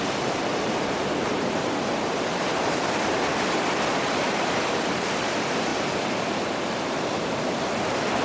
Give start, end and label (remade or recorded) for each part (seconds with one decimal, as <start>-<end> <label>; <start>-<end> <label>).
0.0-5.7 remade; 5.7-6.7 recorded; 6.7-8.2 remade